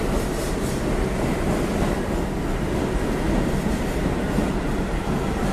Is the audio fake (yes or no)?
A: no